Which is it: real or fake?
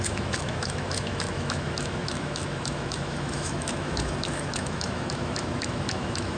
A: fake